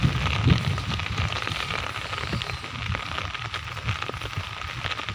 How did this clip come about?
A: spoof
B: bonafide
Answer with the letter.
B